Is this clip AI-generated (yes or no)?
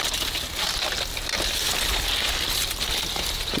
no